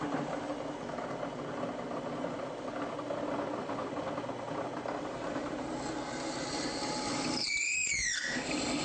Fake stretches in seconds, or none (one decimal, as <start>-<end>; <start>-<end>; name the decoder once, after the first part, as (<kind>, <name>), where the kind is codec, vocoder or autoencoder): 0.0-0.5 (vocoder, BigVGAN v2); 5.0-8.8